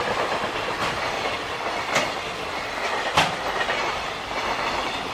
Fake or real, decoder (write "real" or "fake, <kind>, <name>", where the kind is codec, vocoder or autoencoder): real